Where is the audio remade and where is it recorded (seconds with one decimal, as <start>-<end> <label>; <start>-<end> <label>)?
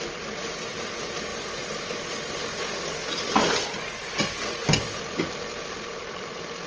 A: 0.0-6.7 recorded